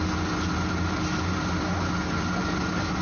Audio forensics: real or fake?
real